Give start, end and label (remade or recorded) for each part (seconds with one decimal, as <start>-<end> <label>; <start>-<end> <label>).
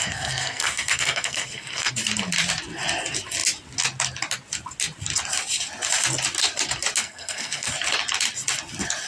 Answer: 0.0-1.9 remade; 1.9-7.0 recorded; 7.0-7.7 remade; 7.7-9.1 recorded